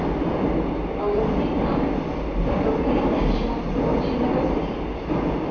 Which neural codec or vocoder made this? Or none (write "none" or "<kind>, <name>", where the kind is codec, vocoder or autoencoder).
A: none